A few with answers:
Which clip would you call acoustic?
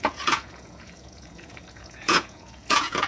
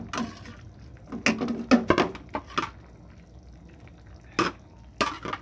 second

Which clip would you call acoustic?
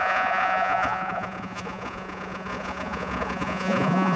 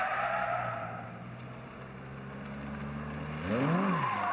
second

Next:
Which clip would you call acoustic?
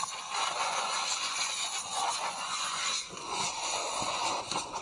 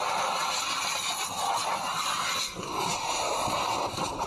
second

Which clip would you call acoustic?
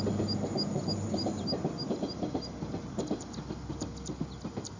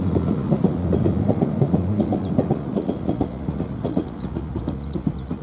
first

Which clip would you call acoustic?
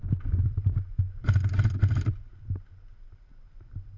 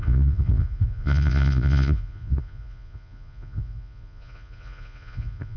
first